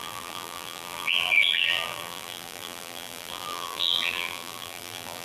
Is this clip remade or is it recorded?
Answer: remade